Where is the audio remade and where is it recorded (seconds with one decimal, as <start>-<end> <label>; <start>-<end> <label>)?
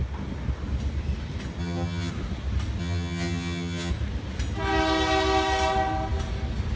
0.0-1.6 recorded; 1.6-2.1 remade; 2.1-2.8 recorded; 2.8-3.9 remade; 3.9-6.8 recorded